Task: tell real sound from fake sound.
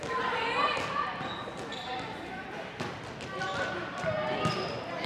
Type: real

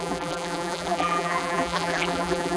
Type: fake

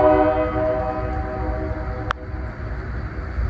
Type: real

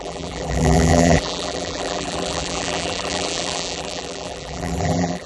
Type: fake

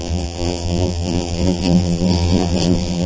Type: fake